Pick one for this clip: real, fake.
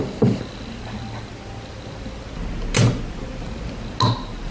real